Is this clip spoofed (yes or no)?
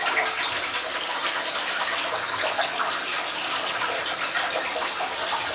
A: no